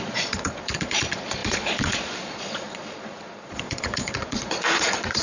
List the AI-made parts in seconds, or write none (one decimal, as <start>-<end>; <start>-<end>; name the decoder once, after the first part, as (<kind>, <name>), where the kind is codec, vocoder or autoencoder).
0.0-5.2 (vocoder, Vocos)